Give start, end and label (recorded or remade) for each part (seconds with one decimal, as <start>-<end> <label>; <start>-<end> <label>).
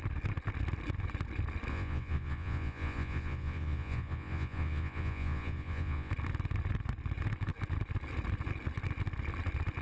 0.0-1.7 recorded; 1.7-6.1 remade; 6.1-9.8 recorded